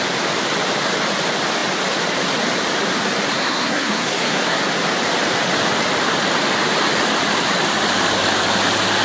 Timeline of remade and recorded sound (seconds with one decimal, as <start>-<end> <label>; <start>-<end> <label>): 0.0-3.3 recorded; 3.3-4.6 remade; 4.6-9.0 recorded